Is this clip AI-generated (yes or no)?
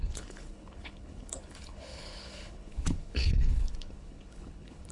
yes